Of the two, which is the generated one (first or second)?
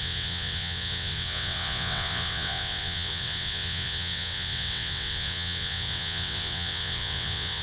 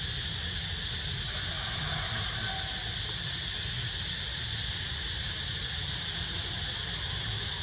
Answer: first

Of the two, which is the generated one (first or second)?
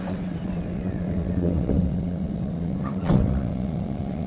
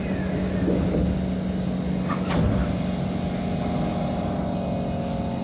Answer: first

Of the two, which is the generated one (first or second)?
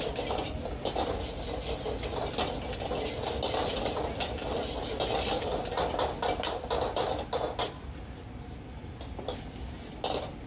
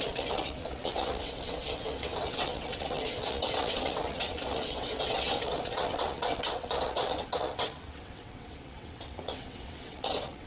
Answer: second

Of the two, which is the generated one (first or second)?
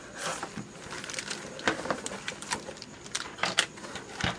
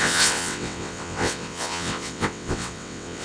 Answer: second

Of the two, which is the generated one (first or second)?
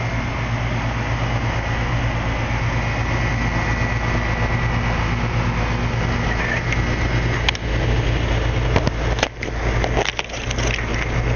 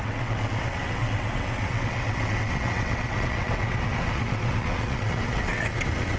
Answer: second